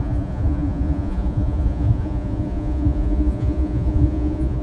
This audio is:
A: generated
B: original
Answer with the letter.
A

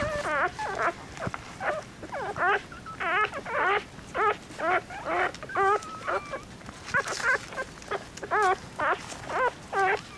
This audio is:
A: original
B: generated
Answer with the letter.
A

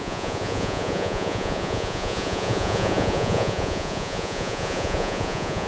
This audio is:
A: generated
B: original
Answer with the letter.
A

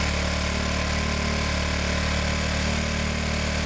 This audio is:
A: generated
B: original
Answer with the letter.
B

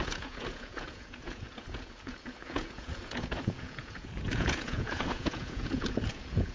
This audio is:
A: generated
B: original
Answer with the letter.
A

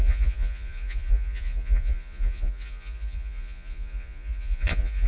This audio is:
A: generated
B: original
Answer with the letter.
A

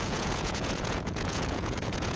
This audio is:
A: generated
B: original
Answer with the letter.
A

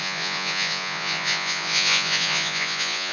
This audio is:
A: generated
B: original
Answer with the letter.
A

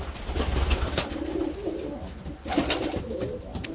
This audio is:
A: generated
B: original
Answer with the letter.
B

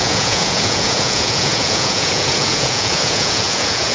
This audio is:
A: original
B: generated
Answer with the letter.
B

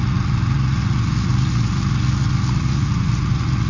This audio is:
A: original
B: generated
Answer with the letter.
B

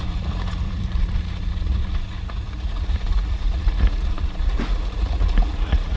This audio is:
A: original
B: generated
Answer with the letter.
B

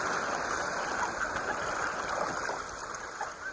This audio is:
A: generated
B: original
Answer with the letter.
B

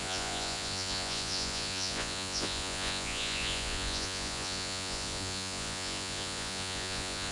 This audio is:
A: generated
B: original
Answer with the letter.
A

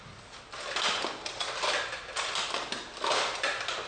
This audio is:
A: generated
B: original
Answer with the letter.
B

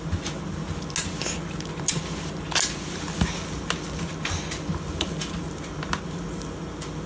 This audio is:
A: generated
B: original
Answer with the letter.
B